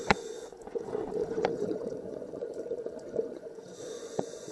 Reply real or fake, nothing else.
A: fake